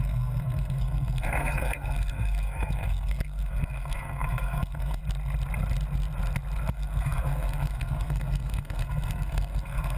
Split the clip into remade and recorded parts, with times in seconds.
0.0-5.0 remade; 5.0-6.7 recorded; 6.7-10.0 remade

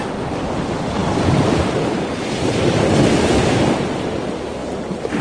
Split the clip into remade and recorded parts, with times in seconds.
0.0-5.2 recorded

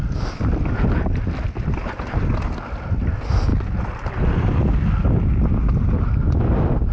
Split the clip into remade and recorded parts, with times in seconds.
0.0-6.9 recorded

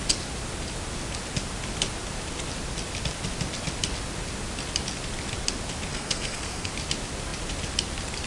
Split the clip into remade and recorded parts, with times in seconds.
0.0-5.9 recorded; 5.9-6.7 remade; 6.7-8.3 recorded

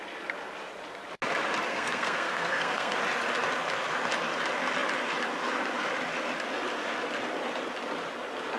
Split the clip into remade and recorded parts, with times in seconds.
0.0-1.7 recorded; 1.7-2.9 remade; 2.9-8.6 recorded

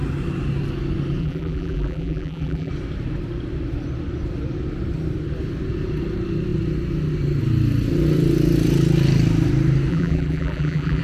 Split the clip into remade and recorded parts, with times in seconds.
0.0-1.2 recorded; 1.2-2.7 remade; 2.7-9.9 recorded; 9.9-11.0 remade

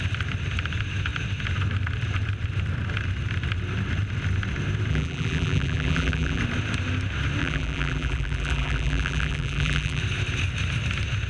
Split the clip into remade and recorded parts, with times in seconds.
0.0-4.9 recorded; 4.9-6.4 remade; 6.4-7.4 recorded; 7.4-10.0 remade; 10.0-11.3 recorded

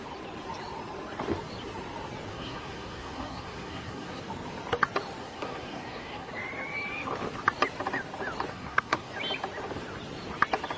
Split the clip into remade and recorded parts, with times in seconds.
0.0-2.3 recorded; 2.3-4.2 remade; 4.2-5.2 recorded; 5.2-6.3 remade; 6.3-8.5 recorded; 8.5-9.1 remade; 9.1-10.8 recorded